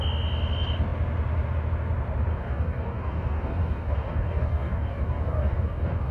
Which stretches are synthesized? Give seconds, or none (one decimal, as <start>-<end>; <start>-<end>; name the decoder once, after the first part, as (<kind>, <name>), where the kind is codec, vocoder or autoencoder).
2.3-6.1 (codec, DAC)